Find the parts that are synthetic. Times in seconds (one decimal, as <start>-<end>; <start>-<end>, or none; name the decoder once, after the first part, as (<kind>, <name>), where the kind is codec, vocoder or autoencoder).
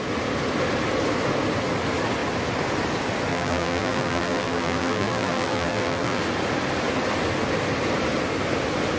3.3-6.2 (vocoder, BigVGAN v2)